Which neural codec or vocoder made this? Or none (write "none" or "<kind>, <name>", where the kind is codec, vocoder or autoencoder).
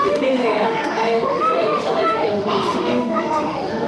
autoencoder, DAC-VAE